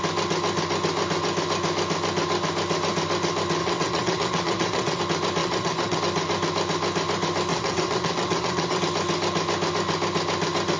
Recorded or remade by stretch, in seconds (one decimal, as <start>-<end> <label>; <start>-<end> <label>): 0.0-3.6 recorded; 3.6-5.0 remade; 5.0-5.4 recorded; 5.4-6.0 remade; 6.0-7.5 recorded; 7.5-8.8 remade; 8.8-10.8 recorded